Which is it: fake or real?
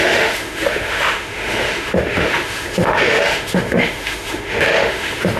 fake